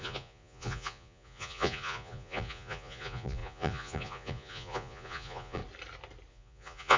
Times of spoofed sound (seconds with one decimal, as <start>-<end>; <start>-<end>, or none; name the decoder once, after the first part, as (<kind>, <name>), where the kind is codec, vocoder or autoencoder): 0.0-5.6 (vocoder, Vocos); 6.3-7.0